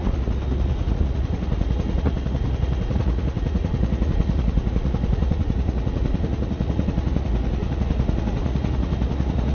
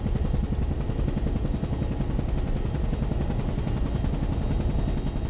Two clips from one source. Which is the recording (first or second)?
second